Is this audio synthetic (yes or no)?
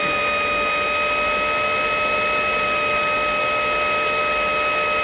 no